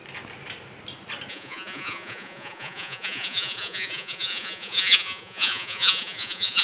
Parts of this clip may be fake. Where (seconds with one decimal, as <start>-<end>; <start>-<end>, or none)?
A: 1.3-6.6